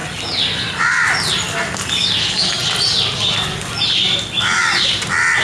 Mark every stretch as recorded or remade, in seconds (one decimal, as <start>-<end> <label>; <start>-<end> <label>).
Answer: 0.0-5.4 recorded